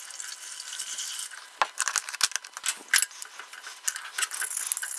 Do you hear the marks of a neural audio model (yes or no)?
no